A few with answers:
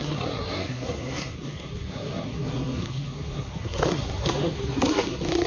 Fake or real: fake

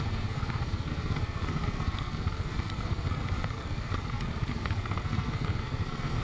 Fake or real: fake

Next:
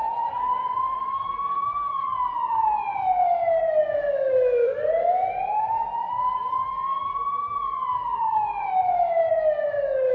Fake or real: real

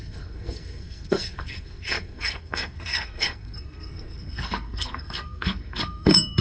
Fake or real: fake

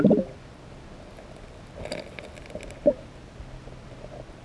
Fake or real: real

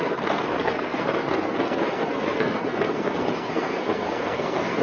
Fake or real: fake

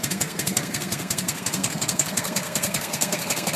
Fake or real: fake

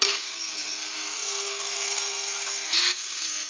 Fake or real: fake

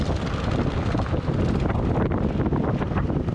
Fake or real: real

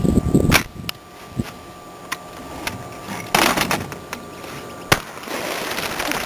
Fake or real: real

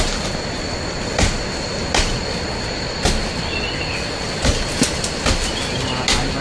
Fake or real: real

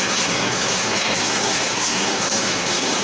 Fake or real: fake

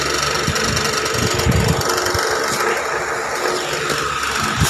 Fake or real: real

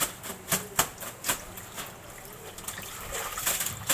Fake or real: real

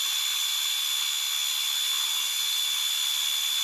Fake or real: real